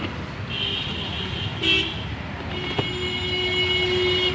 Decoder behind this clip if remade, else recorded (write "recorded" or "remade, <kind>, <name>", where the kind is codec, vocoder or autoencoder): recorded